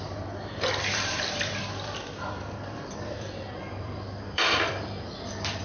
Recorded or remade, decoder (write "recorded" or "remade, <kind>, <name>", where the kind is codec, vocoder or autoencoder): remade, vocoder, BigVGAN v2